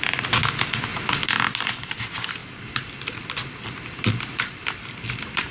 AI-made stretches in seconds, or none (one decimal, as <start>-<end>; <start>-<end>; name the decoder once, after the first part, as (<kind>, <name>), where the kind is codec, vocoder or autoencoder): 0.0-0.9 (vocoder, BigVGAN v2); 1.4-5.5